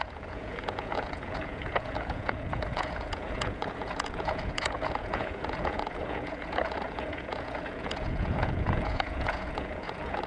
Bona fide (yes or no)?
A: no